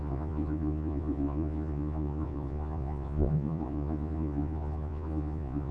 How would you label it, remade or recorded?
remade